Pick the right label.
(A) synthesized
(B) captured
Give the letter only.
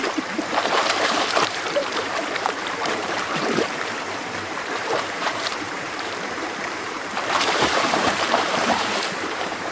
A